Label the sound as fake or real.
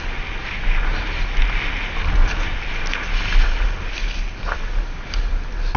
real